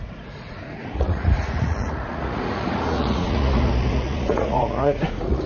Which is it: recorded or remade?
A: remade